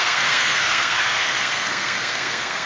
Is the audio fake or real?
fake